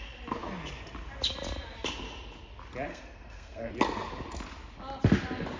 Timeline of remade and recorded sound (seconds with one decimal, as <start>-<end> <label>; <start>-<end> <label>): 0.0-2.9 recorded; 2.9-3.7 remade; 3.7-5.6 recorded